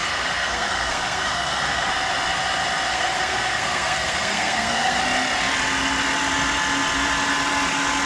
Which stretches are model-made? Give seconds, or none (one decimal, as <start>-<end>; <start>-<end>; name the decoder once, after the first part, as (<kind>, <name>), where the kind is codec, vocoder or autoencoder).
0.0-1.9 (codec, SNAC); 2.9-5.0

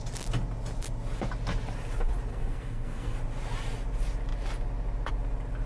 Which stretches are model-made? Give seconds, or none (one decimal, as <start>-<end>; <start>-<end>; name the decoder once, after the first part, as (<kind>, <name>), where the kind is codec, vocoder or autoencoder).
2.3-3.2 (codec, SNAC)

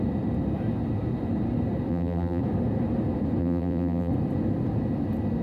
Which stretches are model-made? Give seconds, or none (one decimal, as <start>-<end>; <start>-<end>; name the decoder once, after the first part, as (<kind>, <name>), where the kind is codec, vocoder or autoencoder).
1.9-2.4 (vocoder, BigVGAN v2); 3.4-4.1

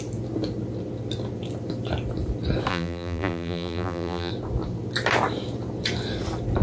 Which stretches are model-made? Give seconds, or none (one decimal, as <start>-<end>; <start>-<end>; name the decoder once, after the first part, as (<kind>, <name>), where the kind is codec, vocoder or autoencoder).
2.7-4.3 (vocoder, BigVGAN v2)

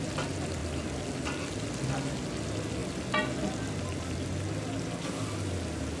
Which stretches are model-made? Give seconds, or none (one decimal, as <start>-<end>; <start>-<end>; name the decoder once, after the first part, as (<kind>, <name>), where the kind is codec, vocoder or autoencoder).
none

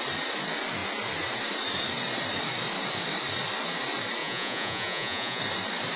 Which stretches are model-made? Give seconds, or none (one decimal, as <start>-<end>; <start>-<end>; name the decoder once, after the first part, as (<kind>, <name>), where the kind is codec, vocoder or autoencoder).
4.2-5.4 (vocoder, Vocos)

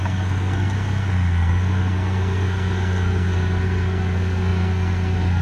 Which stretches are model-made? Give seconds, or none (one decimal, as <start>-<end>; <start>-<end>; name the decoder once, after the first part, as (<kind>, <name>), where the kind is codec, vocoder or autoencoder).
0.0-5.4 (codec, SNAC)

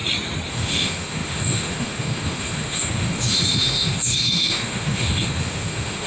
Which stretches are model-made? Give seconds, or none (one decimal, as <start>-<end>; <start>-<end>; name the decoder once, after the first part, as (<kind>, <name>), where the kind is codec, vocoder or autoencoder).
0.5-6.1 (autoencoder, DAC-VAE)